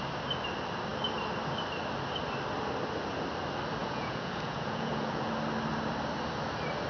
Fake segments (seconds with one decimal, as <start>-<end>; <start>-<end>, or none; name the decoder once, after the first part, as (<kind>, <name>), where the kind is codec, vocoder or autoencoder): 3.8-5.3 (vocoder, Vocos)